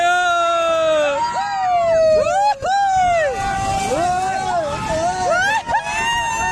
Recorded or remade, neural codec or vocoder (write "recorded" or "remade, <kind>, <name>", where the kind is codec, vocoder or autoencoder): recorded